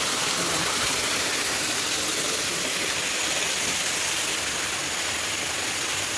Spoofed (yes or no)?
no